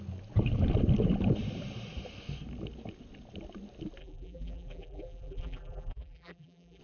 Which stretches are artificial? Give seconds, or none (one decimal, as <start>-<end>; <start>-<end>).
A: 4.0-6.8